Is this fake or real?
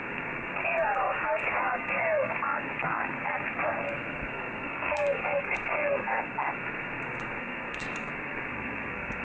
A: fake